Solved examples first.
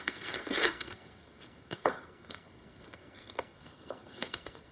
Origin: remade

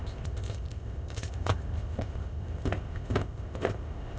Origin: remade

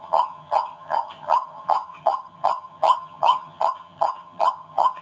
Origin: remade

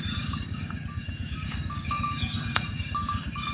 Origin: remade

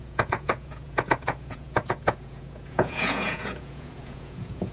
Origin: remade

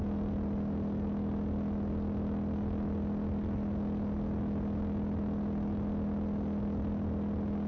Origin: recorded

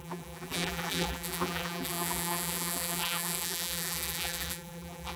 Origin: remade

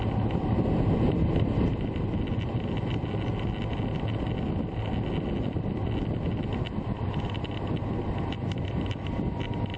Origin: recorded